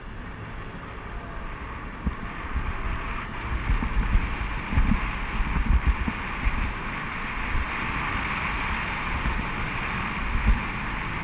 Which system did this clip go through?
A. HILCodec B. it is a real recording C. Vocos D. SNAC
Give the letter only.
B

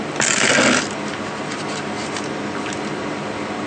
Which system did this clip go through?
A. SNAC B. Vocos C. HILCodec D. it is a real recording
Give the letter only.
D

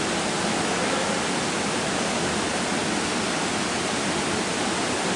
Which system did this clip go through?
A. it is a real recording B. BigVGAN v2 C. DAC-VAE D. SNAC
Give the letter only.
A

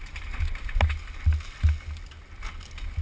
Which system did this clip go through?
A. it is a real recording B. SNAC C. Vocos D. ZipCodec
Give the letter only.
A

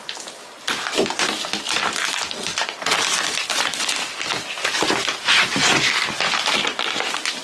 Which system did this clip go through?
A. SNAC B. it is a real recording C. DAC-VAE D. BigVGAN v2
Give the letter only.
B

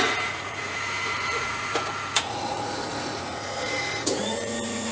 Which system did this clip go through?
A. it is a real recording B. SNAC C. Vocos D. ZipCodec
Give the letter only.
C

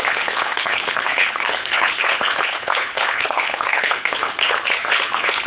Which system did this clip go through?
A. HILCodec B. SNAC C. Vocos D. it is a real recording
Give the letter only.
A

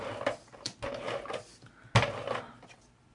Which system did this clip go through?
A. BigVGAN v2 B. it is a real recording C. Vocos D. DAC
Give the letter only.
B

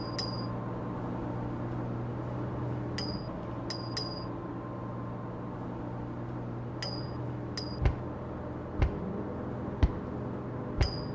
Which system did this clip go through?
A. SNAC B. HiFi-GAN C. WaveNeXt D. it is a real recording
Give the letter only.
D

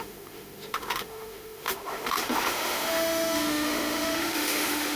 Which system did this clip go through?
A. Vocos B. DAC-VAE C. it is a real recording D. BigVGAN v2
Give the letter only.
B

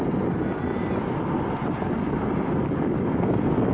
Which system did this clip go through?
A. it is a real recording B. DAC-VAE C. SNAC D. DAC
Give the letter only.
A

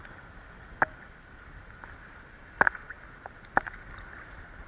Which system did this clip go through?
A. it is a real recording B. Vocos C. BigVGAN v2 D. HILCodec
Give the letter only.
A